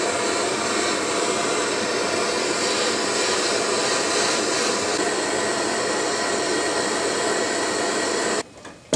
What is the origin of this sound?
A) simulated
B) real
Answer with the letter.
B